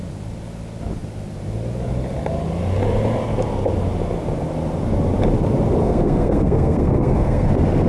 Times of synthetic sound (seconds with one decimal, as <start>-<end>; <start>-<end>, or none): 5.8-7.5